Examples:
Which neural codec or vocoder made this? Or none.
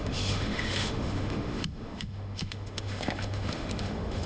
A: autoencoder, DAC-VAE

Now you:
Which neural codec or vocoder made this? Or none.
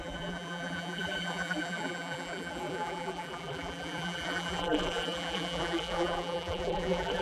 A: vocoder, BigVGAN v2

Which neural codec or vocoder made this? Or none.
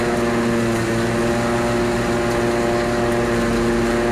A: none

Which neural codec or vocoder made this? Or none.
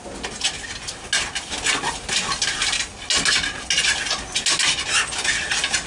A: none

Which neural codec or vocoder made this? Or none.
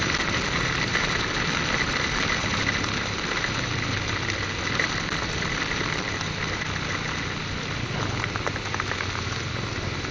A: none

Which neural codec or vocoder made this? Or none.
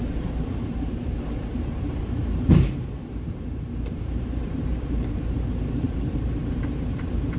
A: vocoder, BigVGAN v2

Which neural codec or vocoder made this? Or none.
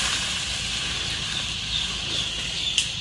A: none